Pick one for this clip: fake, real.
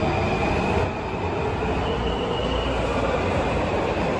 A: real